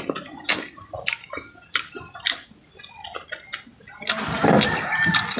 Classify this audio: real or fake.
real